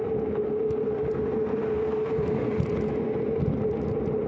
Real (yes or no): yes